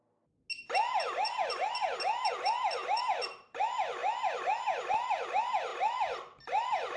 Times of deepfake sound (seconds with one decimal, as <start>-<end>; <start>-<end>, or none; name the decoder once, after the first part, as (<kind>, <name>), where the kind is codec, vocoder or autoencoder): 2.3-4.0 (vocoder, BigVGAN v2); 4.9-7.0